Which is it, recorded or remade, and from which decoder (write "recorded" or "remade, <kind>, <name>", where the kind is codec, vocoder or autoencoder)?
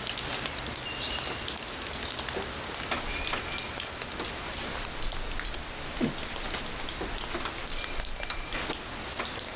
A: recorded